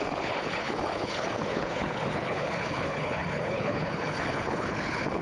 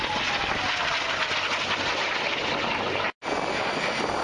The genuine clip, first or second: second